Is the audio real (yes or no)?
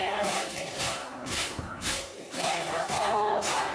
no